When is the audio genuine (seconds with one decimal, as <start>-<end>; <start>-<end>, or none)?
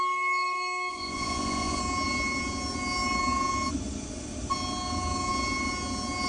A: 0.0-0.9; 1.8-6.3